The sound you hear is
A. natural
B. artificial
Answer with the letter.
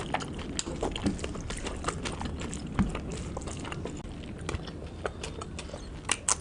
A